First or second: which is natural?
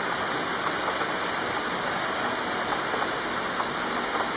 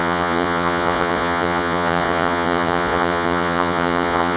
first